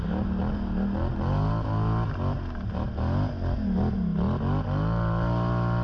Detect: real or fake real